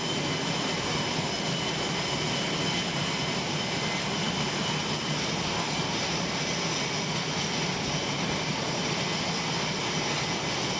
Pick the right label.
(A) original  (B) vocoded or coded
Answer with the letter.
A